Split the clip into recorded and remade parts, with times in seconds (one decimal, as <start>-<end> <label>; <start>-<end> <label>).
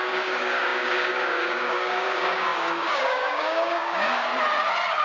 0.0-4.3 remade; 4.3-5.0 recorded